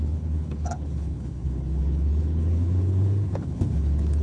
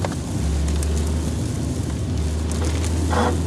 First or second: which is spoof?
first